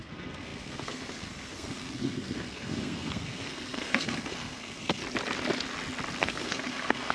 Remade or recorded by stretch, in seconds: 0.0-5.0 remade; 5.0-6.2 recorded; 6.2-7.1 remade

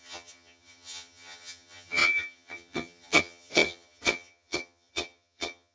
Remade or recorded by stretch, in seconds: 0.0-5.7 remade